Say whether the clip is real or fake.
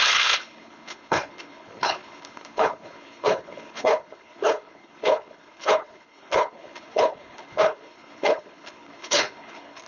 fake